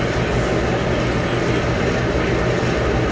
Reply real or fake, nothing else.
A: real